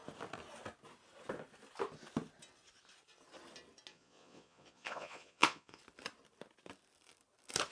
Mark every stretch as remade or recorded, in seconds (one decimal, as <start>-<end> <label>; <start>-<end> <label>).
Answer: 0.0-3.9 recorded; 3.9-5.8 remade; 5.8-7.7 recorded